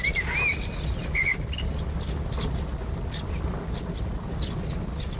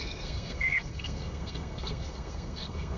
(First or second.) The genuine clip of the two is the first